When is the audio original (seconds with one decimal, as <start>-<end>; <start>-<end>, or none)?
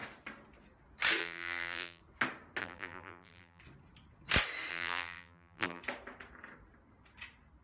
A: 0.0-1.2; 2.0-2.6; 3.6-4.7; 5.8-7.6